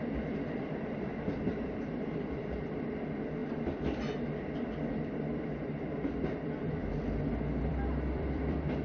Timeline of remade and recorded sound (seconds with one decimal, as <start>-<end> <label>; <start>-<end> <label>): 0.0-3.4 remade; 3.4-4.9 recorded; 4.9-6.8 remade; 6.8-7.6 recorded; 7.6-8.8 remade